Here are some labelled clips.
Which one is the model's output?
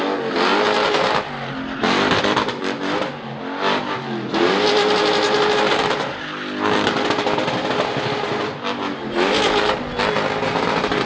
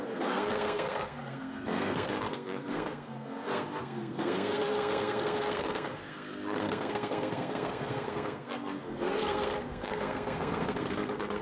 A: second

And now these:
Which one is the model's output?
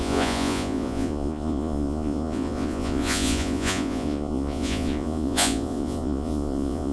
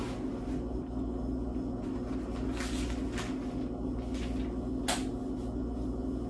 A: first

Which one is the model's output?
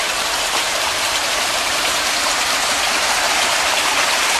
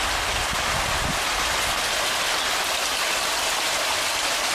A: first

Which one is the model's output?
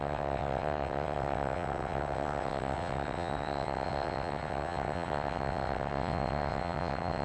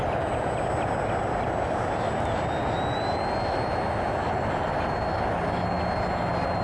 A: first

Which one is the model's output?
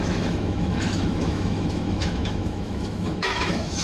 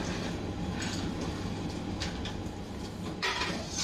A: first